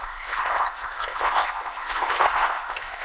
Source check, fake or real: fake